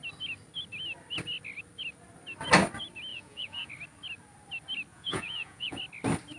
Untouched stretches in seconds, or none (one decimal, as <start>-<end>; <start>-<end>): 0.0-3.1; 3.7-4.9; 5.8-6.4